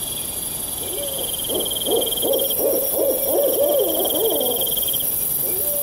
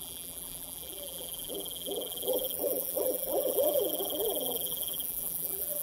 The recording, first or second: first